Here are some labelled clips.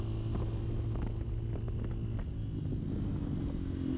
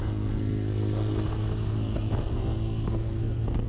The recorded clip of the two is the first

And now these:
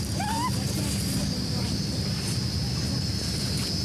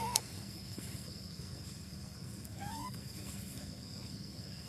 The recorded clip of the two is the first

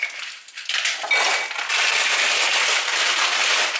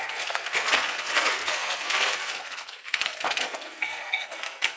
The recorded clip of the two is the first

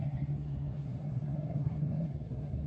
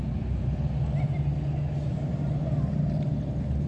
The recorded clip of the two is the second